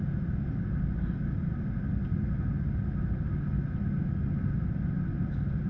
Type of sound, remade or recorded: recorded